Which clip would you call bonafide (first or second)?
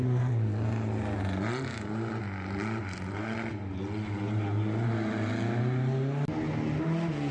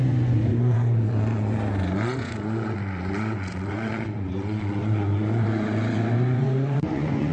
first